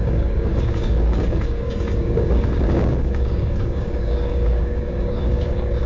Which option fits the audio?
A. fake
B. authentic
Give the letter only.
A